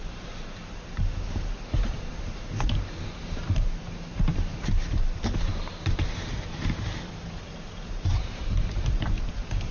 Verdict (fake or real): fake